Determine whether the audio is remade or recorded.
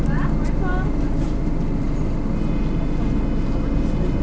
recorded